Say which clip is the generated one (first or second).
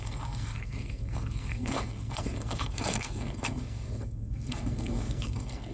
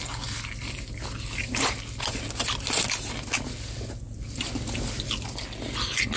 first